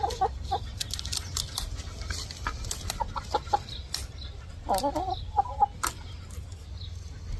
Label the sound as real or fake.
real